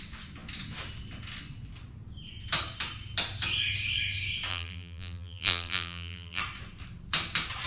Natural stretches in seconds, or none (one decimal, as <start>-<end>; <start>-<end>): 0.0-4.5; 6.4-7.7